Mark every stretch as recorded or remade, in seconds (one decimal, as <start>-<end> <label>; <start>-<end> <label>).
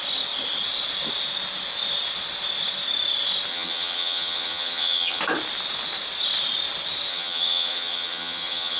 0.0-3.5 recorded; 3.5-5.2 remade; 5.2-7.1 recorded; 7.1-8.8 remade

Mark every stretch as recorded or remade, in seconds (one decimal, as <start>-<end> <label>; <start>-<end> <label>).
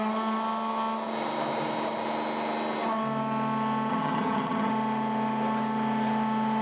0.0-3.9 recorded; 3.9-4.7 remade; 4.7-6.6 recorded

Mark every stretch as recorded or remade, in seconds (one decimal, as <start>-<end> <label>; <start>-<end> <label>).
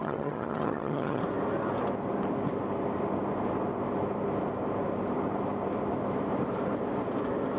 0.0-1.2 remade; 1.2-7.6 recorded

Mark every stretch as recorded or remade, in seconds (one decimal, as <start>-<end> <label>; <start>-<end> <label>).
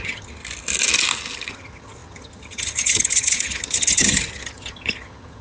0.0-0.4 remade; 0.4-1.5 recorded; 1.5-5.4 remade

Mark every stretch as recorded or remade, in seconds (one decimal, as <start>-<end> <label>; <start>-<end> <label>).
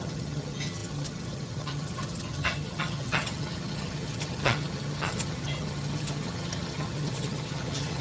0.0-8.0 remade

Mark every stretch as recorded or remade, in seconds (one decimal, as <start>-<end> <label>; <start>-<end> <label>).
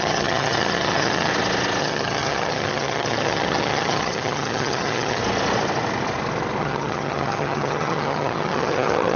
0.0-1.3 remade; 1.3-1.8 recorded; 1.8-5.2 remade; 5.2-6.6 recorded; 6.6-9.2 remade